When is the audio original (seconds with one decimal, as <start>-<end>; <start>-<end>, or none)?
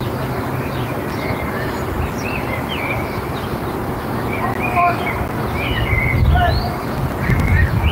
0.0-2.2; 3.9-7.9